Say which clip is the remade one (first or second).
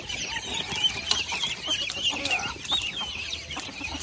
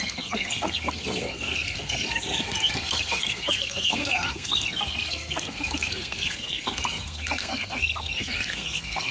second